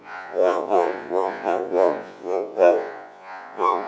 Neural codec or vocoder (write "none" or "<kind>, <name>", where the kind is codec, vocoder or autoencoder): vocoder, Vocos